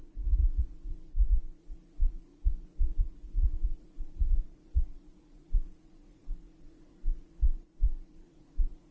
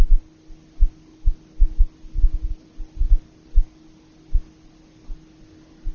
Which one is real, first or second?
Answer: second